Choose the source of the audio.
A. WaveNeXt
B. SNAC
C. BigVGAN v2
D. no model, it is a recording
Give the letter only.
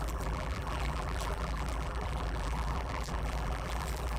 C